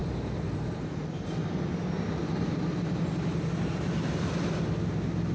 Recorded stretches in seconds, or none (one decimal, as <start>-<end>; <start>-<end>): 0.0-5.3